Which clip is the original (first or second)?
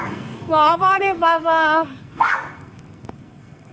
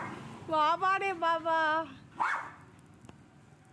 second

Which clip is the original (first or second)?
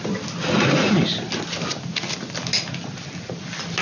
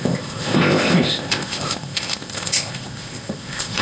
first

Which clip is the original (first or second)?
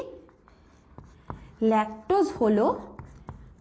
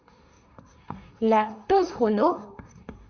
first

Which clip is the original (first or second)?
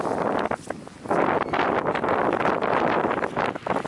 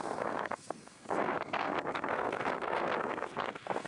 first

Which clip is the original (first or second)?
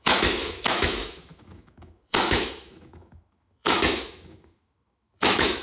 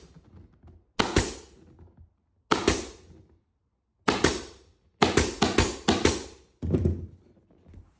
second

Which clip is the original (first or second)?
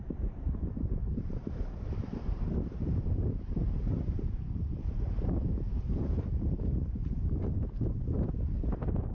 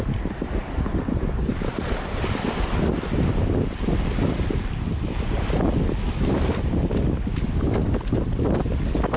second